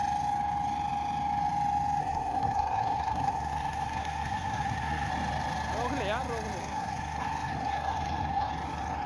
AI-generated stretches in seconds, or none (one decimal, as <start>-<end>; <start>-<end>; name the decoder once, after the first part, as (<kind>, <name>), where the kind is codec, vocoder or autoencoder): 2.0-5.1 (codec, SNAC); 6.6-8.5